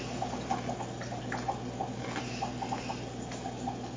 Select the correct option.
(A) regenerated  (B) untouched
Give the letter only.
B